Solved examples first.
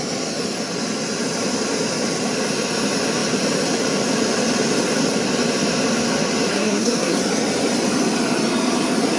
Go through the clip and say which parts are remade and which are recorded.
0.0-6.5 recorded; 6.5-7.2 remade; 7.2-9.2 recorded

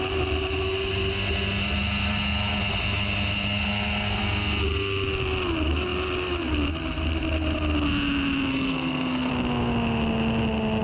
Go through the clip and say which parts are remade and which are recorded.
0.0-8.5 recorded; 8.5-9.3 remade; 9.3-10.8 recorded